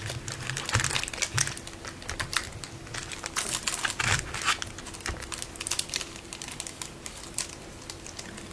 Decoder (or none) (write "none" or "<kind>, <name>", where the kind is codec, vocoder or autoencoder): none